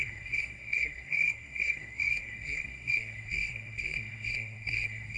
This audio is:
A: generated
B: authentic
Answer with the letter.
A